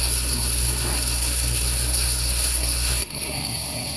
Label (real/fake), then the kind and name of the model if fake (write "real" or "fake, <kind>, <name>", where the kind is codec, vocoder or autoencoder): fake, codec, SNAC